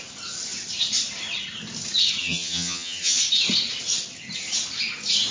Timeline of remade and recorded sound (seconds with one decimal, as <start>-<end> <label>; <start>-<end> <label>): 0.0-2.2 recorded; 2.2-3.2 remade; 3.2-5.3 recorded